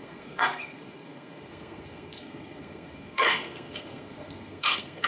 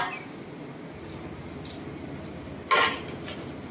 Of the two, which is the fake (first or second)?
first